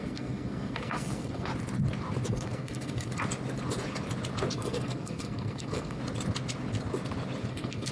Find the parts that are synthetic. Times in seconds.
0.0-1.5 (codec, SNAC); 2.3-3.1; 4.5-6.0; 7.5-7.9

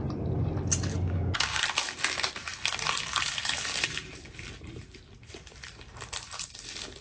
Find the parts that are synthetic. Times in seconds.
0.9-1.6 (codec, DAC)